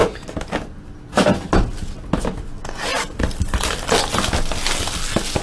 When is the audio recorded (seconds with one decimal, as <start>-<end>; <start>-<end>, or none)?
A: 0.0-5.4